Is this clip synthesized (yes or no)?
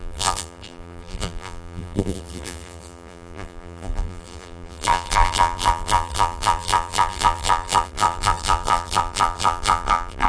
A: yes